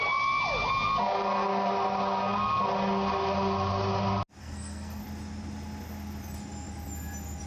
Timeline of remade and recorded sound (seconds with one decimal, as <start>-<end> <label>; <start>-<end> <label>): 0.0-4.4 recorded; 4.4-5.0 remade; 5.0-7.5 recorded